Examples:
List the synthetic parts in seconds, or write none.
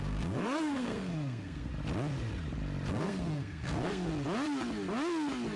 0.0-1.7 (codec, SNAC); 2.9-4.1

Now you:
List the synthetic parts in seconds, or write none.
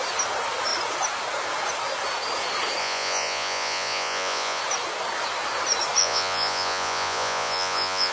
2.8-4.6 (vocoder, Vocos); 6.0-8.1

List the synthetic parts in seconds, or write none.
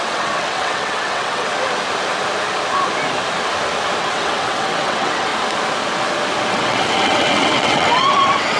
0.0-1.5 (vocoder, WaveNeXt); 4.0-5.3; 6.5-8.6